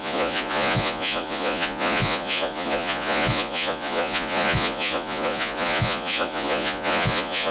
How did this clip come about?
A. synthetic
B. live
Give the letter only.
A